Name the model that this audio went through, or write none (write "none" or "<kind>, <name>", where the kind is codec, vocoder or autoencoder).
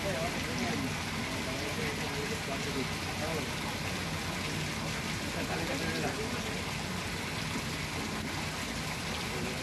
none